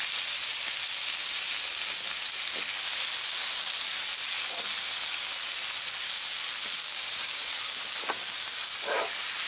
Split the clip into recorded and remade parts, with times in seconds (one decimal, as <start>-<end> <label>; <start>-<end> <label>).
0.0-6.8 recorded; 6.8-7.5 remade; 7.5-9.5 recorded